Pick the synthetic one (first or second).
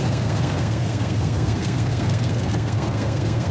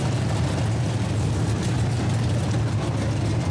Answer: first